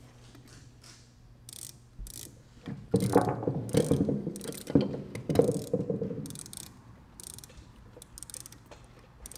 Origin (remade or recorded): recorded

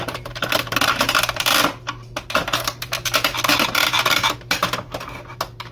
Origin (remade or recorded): remade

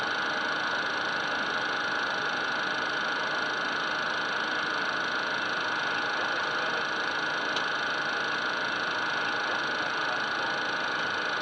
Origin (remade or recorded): recorded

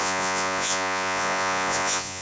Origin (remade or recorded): remade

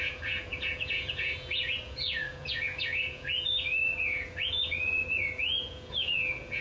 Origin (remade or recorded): remade